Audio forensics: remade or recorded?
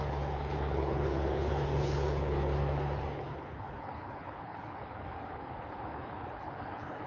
remade